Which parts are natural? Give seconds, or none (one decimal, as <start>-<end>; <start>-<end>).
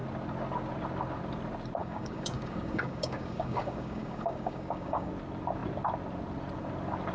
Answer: 0.0-1.8; 5.1-7.1